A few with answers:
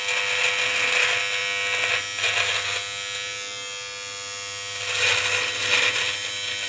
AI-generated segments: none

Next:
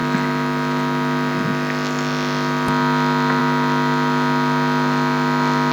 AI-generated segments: none

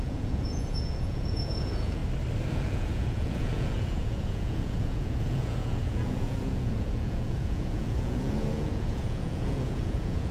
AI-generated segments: 0.0-2.0 (vocoder, Vocos); 2.5-10.3

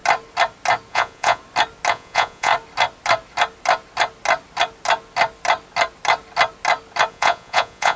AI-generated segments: 0.9-1.4 (vocoder, Vocos); 1.9-2.5; 7.1-8.0

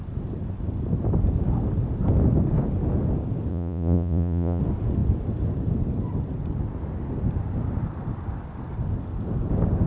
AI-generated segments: 3.5-4.6 (vocoder, Vocos)

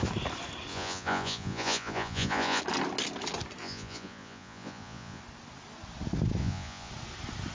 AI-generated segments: 0.7-2.6 (vocoder, Vocos); 3.6-5.2; 6.4-6.9